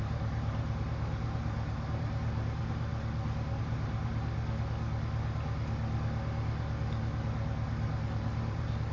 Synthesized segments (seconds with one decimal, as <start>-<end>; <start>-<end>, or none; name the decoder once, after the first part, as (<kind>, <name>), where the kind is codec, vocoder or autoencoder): 0.0-2.9 (vocoder, BigVGAN v2); 3.6-4.1; 7.9-8.9